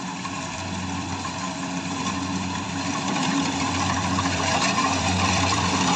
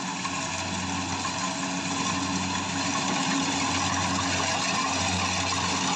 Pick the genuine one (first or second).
second